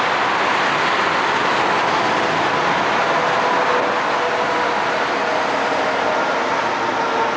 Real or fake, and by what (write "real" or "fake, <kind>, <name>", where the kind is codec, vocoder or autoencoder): real